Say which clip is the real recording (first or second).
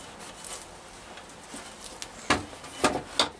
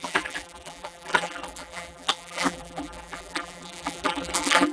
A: first